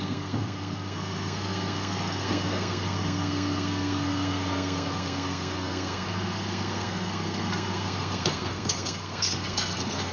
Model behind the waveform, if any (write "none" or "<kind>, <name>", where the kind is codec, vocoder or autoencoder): codec, SNAC